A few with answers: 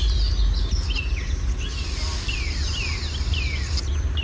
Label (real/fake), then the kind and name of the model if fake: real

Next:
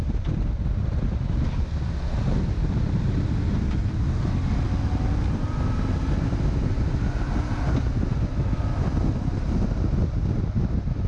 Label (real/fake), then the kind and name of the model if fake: real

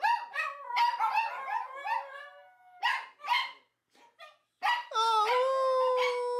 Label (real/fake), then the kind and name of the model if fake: real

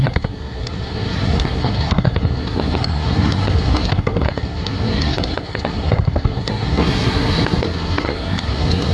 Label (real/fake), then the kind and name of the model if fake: fake, codec, SNAC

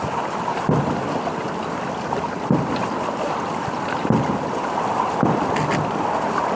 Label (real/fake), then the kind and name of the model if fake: real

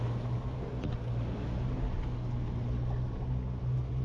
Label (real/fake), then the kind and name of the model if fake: real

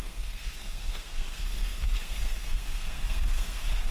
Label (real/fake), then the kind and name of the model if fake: fake, codec, SNAC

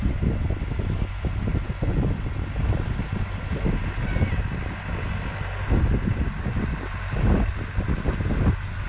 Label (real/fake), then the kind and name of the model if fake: real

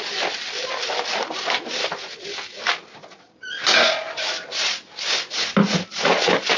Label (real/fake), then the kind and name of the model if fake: real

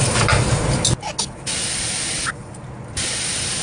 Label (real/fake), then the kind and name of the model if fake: real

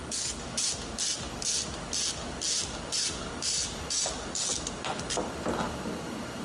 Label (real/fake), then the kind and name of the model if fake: real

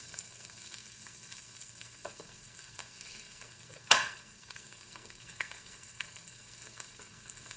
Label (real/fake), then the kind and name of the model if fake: fake, codec, SNAC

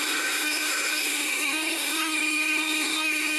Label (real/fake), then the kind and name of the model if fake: fake, codec, SNAC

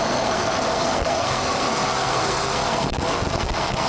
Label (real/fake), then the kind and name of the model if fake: fake, codec, SNAC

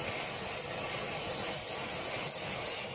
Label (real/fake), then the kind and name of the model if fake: real